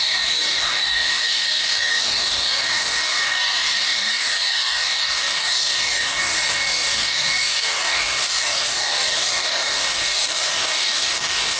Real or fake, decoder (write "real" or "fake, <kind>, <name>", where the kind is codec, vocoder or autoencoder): fake, codec, DAC